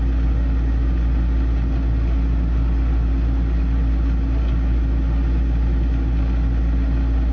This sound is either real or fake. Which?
real